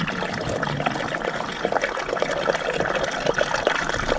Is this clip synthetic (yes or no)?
no